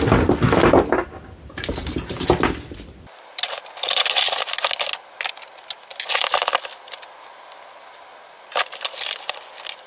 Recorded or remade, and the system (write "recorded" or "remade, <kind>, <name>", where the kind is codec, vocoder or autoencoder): recorded